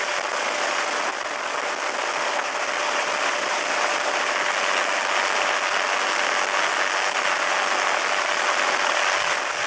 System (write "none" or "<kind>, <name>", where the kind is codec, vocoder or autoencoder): none